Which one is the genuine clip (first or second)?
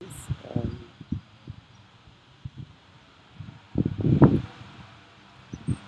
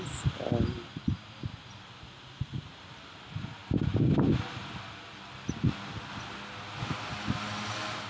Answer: second